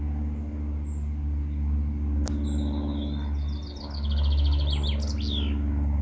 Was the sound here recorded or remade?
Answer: recorded